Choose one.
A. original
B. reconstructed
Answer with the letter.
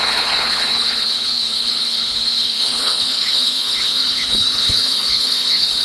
B